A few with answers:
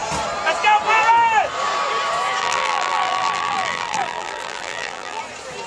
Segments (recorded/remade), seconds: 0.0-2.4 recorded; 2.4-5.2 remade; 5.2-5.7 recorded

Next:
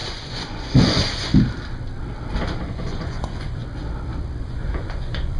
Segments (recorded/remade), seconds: 0.0-1.3 remade; 1.3-2.7 recorded; 2.7-3.6 remade; 3.6-4.4 recorded; 4.4-5.4 remade

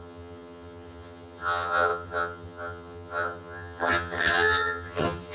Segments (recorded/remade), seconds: 0.0-5.3 remade

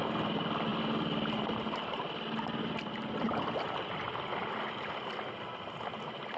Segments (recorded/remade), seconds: 0.0-6.4 recorded

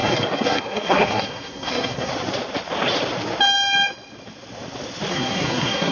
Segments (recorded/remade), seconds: 0.0-2.1 remade; 2.1-5.1 recorded; 5.1-5.9 remade

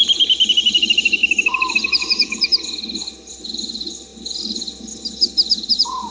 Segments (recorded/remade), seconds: 0.0-1.2 remade; 1.2-1.7 recorded; 1.7-2.5 remade; 2.5-3.3 recorded; 3.3-4.1 remade; 4.1-5.5 recorded; 5.5-6.1 remade